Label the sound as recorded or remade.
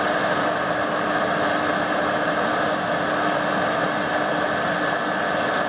recorded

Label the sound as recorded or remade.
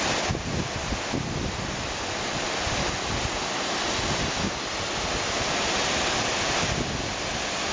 recorded